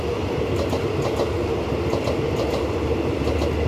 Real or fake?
real